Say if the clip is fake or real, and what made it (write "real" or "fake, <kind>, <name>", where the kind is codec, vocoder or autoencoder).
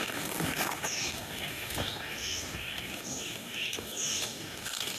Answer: fake, codec, DAC